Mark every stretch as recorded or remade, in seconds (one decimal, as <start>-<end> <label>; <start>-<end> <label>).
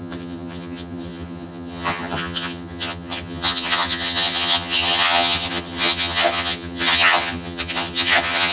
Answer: 0.0-8.5 remade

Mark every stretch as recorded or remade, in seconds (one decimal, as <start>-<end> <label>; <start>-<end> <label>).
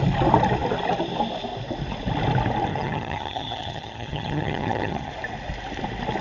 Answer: 0.0-2.7 recorded; 2.7-5.1 remade; 5.1-6.2 recorded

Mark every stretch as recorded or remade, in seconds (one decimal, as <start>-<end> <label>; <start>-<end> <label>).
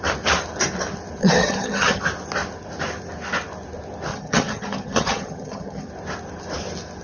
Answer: 0.0-1.2 recorded; 1.2-2.0 remade; 2.0-4.1 recorded; 4.1-5.9 remade; 5.9-7.0 recorded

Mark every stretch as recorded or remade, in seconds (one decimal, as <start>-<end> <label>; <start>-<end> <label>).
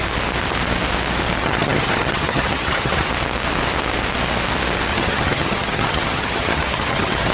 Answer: 0.0-1.4 recorded; 1.4-3.1 remade; 3.1-4.9 recorded; 4.9-7.3 remade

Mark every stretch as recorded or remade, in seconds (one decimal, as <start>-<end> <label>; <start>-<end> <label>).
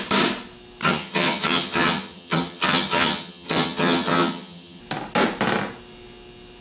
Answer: 0.0-0.8 recorded; 0.8-4.8 remade; 4.8-6.6 recorded